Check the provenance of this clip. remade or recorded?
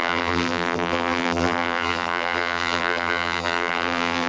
remade